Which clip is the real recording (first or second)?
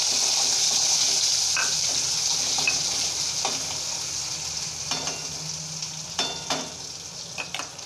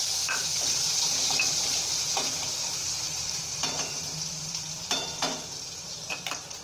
first